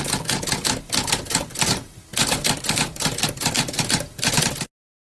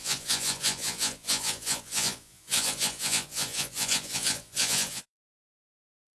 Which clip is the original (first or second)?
first